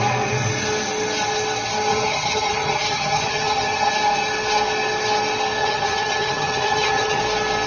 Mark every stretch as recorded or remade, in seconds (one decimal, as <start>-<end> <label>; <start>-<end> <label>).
0.0-1.9 recorded; 1.9-3.9 remade; 3.9-5.6 recorded; 5.6-7.2 remade; 7.2-7.7 recorded